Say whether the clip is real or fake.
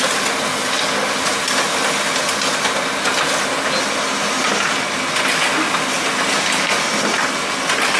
real